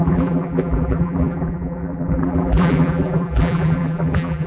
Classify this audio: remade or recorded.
remade